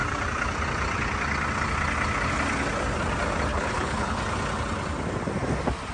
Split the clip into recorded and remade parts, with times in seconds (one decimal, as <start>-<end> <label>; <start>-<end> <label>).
0.0-3.5 recorded; 3.5-4.2 remade; 4.2-5.9 recorded